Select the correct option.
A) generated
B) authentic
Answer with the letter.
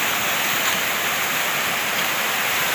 B